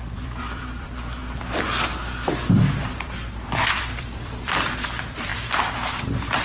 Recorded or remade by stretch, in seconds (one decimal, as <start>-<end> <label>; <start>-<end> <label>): 0.0-5.3 remade; 5.3-5.9 recorded; 5.9-6.4 remade